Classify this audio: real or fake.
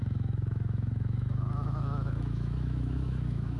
fake